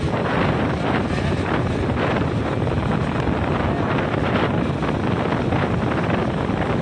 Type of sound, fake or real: real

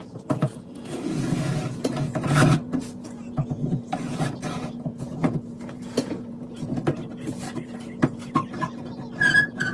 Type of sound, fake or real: fake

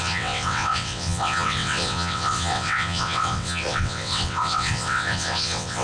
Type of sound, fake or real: fake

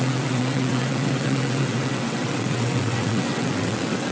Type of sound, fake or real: fake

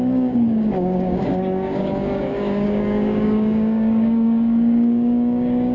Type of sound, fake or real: fake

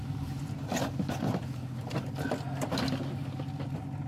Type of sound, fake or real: real